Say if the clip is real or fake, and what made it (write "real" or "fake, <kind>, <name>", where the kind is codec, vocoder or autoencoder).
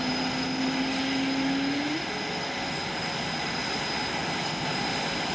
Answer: real